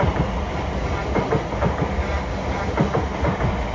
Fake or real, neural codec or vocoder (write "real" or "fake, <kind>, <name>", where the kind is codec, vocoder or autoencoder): real